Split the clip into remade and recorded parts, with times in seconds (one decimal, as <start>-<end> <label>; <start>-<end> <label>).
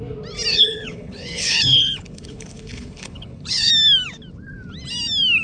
0.0-0.5 recorded; 0.5-3.7 remade; 3.7-5.4 recorded